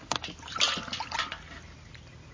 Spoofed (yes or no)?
no